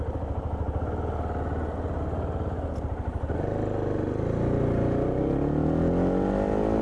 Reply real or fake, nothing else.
real